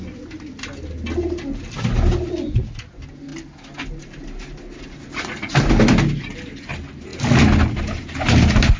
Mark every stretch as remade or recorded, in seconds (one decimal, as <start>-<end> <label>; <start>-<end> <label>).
0.0-8.8 recorded

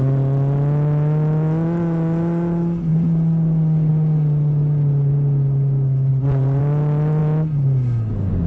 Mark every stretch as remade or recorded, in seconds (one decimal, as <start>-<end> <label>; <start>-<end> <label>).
0.0-6.1 recorded; 6.1-6.6 remade; 6.6-8.5 recorded

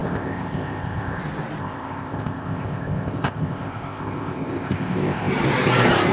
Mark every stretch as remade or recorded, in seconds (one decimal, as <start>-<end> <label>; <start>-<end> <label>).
0.0-1.2 remade; 1.2-1.6 recorded; 1.6-5.3 remade; 5.3-6.1 recorded

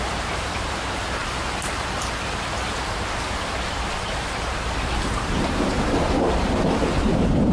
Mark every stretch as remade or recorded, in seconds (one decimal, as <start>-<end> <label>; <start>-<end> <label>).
0.0-1.2 remade; 1.2-3.7 recorded; 3.7-7.5 remade

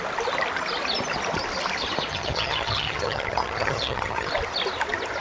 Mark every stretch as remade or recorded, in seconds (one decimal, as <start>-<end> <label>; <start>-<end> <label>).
0.0-2.1 recorded; 2.1-4.3 remade; 4.3-5.2 recorded

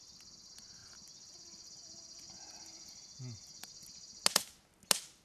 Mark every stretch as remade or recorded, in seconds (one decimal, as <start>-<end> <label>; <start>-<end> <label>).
0.0-5.2 recorded

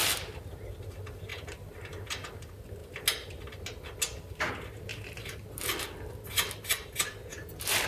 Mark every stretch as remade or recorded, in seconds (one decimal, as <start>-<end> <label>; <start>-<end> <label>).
0.0-7.9 recorded